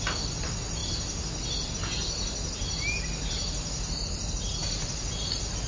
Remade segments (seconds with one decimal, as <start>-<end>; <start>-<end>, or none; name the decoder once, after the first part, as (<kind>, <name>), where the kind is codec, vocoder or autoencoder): none

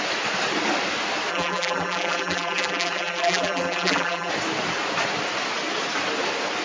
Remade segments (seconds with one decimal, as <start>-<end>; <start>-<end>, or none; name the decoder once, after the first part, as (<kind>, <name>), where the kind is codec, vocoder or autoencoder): 1.3-4.3 (vocoder, BigVGAN v2)

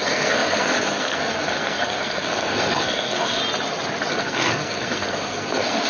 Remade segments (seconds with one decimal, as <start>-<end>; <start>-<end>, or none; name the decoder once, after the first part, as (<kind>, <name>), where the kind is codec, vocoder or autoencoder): 0.0-3.4 (codec, SNAC); 4.1-5.9

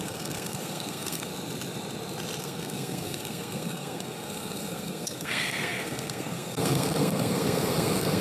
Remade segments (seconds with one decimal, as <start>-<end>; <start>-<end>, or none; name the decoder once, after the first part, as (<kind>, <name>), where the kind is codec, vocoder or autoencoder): 0.0-1.3 (codec, SNAC); 2.4-8.2

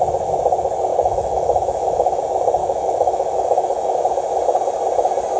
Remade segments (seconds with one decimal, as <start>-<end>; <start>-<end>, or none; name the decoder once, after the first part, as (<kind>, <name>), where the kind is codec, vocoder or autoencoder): 0.9-2.2 (autoencoder, DAC-VAE); 2.6-4.0